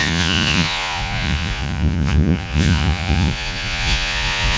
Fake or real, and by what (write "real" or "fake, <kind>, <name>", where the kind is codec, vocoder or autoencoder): fake, vocoder, Vocos